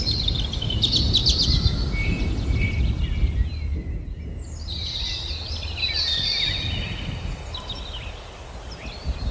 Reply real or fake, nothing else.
real